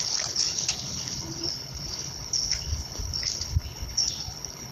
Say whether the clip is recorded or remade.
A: remade